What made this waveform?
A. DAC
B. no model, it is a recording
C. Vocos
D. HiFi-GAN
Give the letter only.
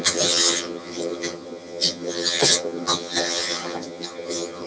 D